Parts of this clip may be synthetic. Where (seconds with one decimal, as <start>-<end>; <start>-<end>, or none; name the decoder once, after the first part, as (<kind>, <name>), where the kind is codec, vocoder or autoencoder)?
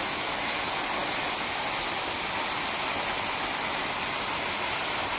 none